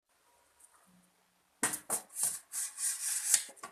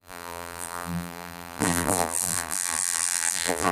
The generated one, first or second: second